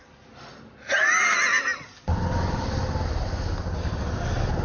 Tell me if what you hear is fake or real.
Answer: real